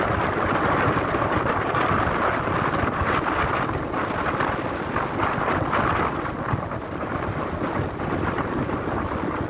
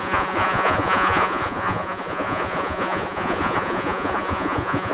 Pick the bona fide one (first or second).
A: first